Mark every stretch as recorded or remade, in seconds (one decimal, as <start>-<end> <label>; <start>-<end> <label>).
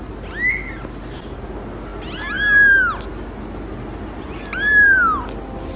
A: 0.0-5.8 recorded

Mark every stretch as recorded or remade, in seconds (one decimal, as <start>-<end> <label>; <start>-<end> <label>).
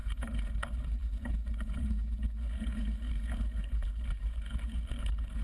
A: 0.0-5.4 remade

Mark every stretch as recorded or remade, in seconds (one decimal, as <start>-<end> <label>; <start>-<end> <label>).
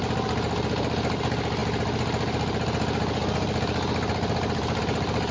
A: 0.0-5.3 recorded